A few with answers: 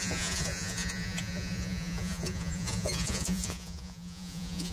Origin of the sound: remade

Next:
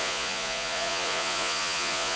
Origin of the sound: remade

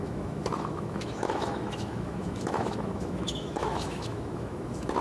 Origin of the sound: remade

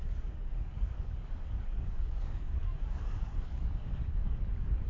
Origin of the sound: remade